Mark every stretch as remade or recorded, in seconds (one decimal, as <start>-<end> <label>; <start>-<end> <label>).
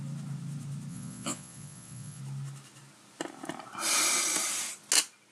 0.0-0.9 recorded; 0.9-2.2 remade; 2.2-5.3 recorded